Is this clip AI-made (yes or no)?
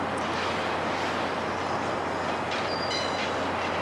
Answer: no